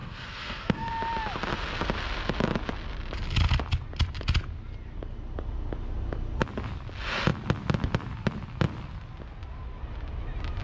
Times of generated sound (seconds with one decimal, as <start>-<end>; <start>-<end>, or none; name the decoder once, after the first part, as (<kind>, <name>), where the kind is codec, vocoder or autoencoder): 0.0-0.9 (codec, SNAC)